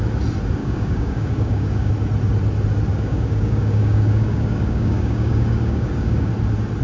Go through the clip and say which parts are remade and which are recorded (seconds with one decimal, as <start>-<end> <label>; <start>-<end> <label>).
0.0-0.6 recorded; 0.6-1.9 remade; 1.9-2.9 recorded; 2.9-6.3 remade; 6.3-6.8 recorded